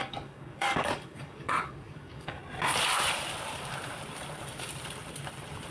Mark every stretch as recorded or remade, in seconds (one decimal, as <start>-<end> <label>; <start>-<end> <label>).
0.0-2.4 remade; 2.4-5.7 recorded